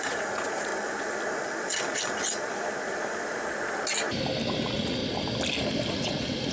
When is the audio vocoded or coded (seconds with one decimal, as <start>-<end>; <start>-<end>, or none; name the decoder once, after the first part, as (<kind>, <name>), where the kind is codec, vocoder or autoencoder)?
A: 0.0-0.7 (vocoder, Vocos); 4.6-5.0; 5.9-6.5